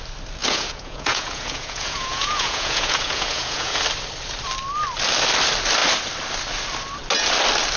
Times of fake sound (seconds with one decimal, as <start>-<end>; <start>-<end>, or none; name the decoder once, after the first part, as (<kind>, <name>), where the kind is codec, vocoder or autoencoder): 0.4-3.8 (vocoder, Vocos)